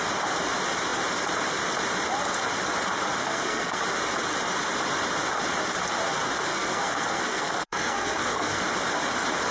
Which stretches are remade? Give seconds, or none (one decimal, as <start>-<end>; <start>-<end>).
3.2-3.8; 6.5-8.6

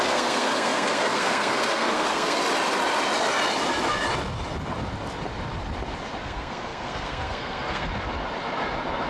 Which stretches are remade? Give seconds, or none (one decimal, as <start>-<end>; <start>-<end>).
0.0-2.4; 6.2-7.9

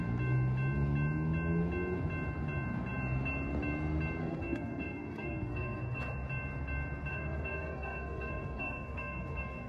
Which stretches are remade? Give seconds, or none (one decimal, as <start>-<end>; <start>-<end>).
4.2-6.0; 7.1-9.7

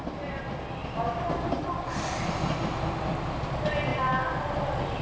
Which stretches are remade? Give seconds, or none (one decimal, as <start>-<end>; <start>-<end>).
none

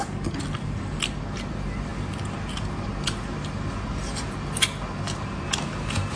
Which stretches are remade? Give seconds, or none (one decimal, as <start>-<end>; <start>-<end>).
none

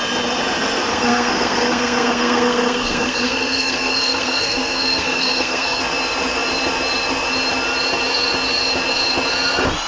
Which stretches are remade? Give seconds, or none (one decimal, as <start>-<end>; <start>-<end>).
0.9-5.8

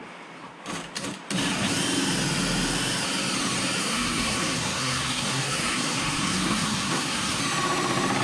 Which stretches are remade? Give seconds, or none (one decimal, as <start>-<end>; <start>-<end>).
3.8-7.4